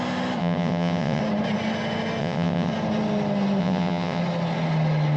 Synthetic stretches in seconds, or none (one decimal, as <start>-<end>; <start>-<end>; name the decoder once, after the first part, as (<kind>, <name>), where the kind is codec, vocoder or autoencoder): 0.4-1.2 (vocoder, WaveNeXt); 2.2-2.7; 3.6-4.2